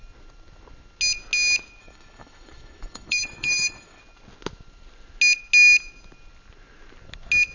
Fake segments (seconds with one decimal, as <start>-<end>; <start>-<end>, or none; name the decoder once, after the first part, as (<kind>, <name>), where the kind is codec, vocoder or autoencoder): 1.8-4.0 (autoencoder, DAC-VAE)